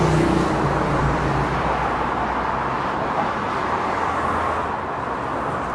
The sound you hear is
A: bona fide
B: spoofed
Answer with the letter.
A